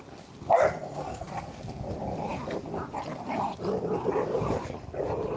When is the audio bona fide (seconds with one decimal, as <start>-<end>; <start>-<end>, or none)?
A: 0.0-1.0; 1.6-5.4